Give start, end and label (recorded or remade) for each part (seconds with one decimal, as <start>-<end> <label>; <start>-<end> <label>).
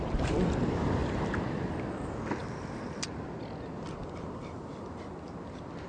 0.0-5.9 recorded